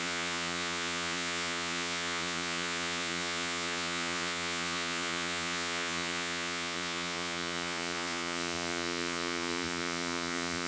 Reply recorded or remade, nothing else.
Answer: remade